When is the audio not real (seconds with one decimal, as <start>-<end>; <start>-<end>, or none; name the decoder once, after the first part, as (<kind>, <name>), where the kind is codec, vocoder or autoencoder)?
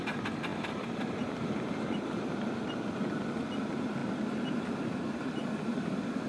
0.5-2.5 (vocoder, BigVGAN v2); 4.0-5.2